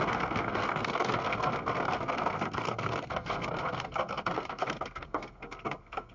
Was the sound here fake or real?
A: fake